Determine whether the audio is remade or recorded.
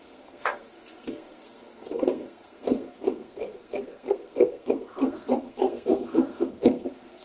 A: remade